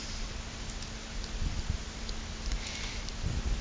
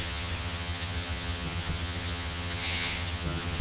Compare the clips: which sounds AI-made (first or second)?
second